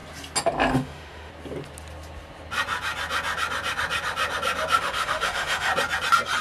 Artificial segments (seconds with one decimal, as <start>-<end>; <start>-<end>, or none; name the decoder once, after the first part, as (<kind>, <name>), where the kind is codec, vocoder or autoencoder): 0.7-1.3 (autoencoder, DAC-VAE); 4.8-5.7